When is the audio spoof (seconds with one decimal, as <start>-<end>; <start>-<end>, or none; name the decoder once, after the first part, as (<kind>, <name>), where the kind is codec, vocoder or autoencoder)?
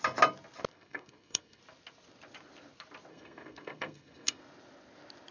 0.7-1.6 (codec, SNAC); 3.1-4.4